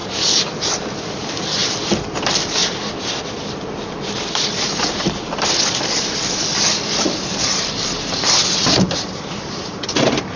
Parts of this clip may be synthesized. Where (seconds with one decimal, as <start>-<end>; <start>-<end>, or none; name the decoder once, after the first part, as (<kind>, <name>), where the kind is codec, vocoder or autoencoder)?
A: 0.0-10.4 (vocoder, BigVGAN v2)